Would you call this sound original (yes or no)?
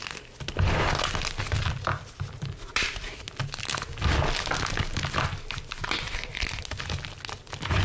yes